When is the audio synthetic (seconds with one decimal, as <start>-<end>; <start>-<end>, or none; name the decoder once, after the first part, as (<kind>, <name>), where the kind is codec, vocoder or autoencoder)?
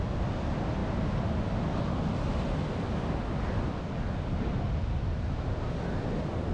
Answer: none